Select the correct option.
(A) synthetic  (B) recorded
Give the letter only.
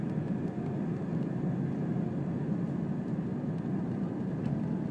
B